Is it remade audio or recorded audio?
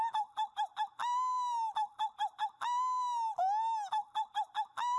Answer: recorded